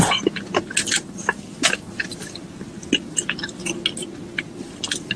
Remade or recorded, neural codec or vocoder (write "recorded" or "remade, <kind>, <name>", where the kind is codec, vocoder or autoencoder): recorded